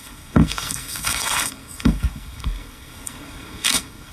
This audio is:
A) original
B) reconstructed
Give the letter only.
B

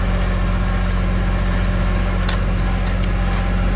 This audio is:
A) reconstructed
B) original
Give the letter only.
B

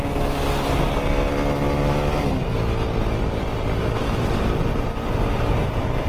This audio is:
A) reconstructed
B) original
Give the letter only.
B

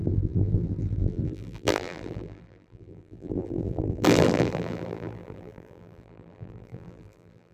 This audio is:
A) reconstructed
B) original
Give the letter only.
A